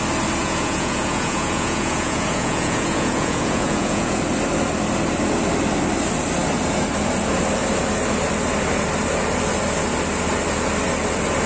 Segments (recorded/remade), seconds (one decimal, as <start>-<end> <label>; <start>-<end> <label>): 0.0-0.4 recorded; 0.4-4.2 remade; 4.2-11.5 recorded